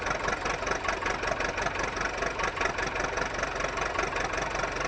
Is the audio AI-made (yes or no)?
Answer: no